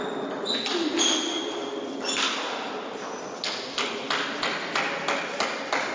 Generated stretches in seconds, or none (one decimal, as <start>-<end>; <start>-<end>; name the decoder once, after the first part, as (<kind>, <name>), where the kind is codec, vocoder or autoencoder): none